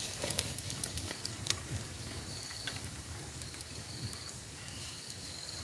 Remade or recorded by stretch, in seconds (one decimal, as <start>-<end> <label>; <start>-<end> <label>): 0.0-5.6 remade